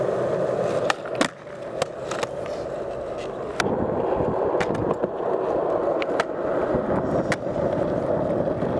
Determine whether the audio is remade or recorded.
recorded